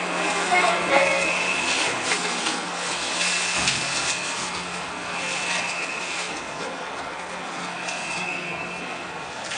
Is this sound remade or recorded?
remade